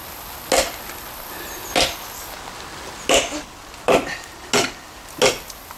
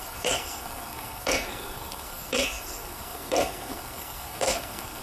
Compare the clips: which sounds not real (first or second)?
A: second